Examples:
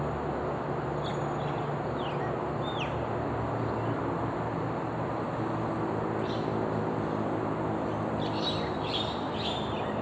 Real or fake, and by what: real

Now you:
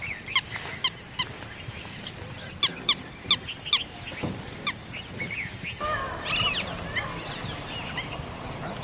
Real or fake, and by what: real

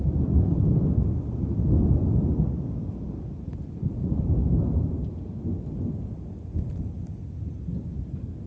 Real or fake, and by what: real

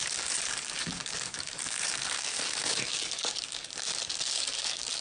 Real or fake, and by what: fake, codec, DAC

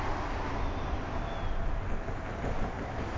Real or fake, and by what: real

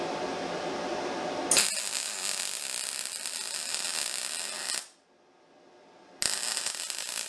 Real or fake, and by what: real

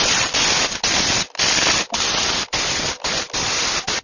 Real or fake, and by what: real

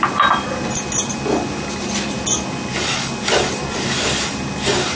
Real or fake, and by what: real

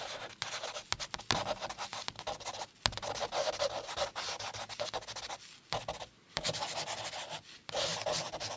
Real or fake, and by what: real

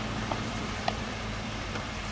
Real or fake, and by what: fake, vocoder, BigVGAN v2